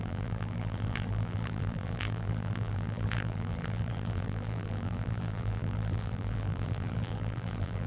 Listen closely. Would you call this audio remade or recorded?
remade